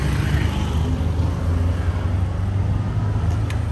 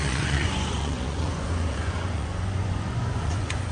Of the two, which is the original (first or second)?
first